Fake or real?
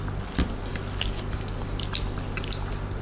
real